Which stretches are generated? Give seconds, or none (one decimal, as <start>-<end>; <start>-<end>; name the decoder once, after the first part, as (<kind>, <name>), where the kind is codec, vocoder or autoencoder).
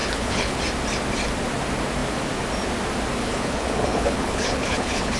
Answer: 0.0-0.6 (codec, HILCodec); 3.2-5.2